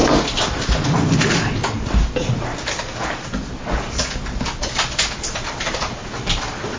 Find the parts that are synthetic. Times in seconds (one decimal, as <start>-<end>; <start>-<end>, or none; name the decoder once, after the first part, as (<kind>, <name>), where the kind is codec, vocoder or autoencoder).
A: none